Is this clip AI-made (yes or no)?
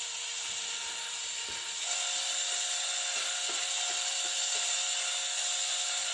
no